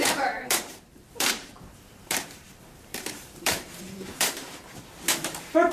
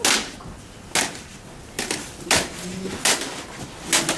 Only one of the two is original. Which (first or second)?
second